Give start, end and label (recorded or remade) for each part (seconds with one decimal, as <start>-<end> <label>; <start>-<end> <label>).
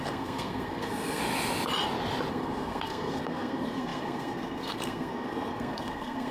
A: 0.0-1.2 remade; 1.2-2.3 recorded; 2.3-6.3 remade